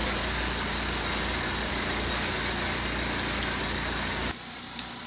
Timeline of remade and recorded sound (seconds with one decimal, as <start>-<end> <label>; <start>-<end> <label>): 0.0-5.1 recorded